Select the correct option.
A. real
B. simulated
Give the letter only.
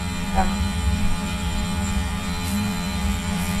B